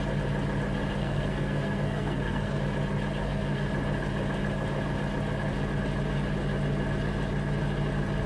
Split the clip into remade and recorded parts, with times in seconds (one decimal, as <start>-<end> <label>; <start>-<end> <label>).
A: 0.0-1.0 recorded; 1.0-2.6 remade; 2.6-3.2 recorded; 3.2-3.7 remade; 3.7-8.3 recorded